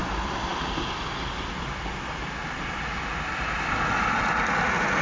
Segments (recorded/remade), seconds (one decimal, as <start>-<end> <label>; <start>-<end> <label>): 0.0-5.0 remade